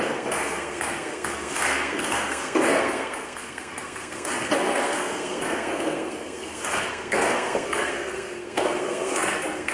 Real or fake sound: fake